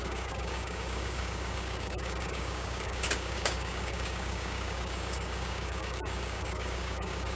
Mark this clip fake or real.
fake